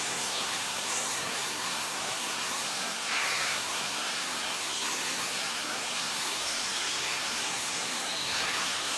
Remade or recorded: remade